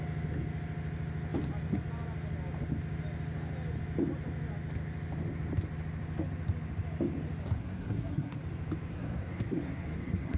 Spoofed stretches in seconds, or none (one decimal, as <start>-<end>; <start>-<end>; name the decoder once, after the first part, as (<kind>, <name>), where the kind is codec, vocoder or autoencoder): 7.6-8.4 (codec, SNAC); 8.9-10.4